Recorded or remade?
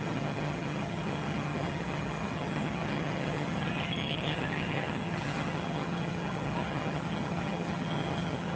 remade